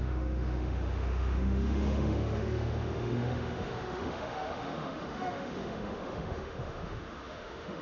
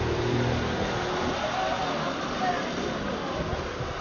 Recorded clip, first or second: second